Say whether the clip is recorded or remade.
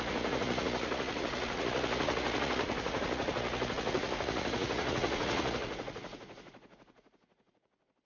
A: remade